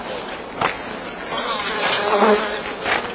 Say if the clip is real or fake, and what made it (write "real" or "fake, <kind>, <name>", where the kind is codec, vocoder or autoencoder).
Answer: real